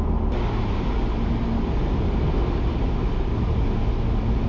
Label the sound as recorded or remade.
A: recorded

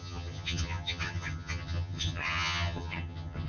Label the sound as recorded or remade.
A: remade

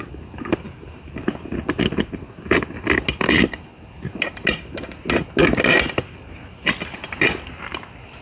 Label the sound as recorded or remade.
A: recorded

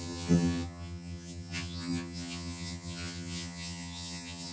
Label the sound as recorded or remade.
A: remade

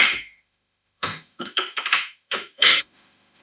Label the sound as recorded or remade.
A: remade